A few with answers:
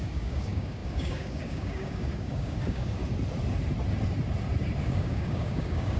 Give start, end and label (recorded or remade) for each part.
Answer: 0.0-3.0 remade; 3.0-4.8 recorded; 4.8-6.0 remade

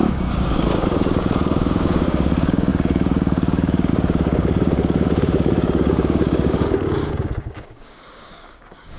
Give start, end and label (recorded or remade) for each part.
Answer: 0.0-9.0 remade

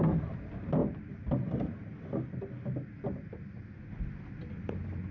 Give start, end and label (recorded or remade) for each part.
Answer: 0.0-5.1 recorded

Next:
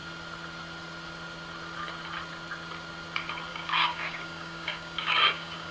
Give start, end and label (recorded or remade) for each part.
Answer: 0.0-3.5 recorded; 3.5-5.7 remade